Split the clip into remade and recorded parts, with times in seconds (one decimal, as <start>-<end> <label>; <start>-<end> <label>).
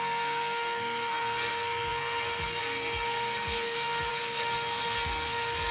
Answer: 0.0-5.7 remade